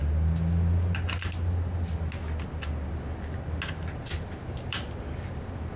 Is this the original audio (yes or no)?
yes